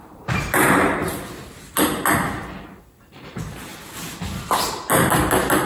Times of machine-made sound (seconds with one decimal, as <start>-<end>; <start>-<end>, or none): 0.0-1.0; 3.0-3.7